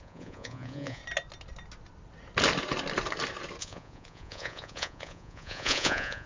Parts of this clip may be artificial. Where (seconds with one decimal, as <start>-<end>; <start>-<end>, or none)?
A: 0.0-1.0; 3.6-6.3